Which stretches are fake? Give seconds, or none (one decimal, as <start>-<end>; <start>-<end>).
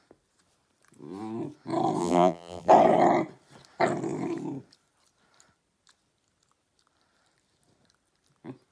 2.0-2.7